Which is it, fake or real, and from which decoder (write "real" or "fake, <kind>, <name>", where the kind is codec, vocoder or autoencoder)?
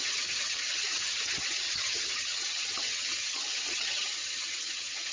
fake, vocoder, HiFi-GAN